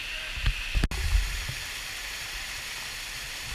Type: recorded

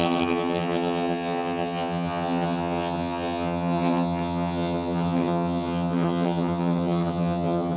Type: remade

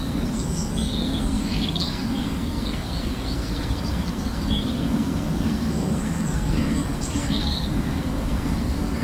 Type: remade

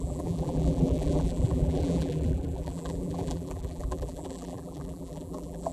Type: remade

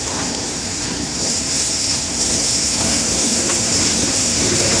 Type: remade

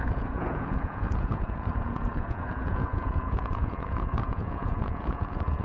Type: remade